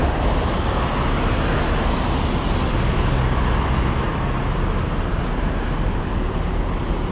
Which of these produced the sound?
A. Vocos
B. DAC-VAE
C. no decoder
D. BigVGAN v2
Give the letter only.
C